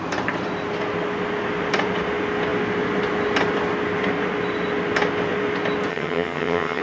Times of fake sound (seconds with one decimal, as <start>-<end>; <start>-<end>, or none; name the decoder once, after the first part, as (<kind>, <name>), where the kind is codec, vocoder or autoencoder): 5.9-6.8 (vocoder, HiFi-GAN)